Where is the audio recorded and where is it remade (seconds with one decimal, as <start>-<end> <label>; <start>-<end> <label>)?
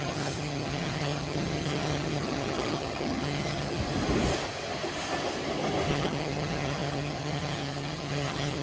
0.0-3.8 remade; 3.8-5.9 recorded; 5.9-8.6 remade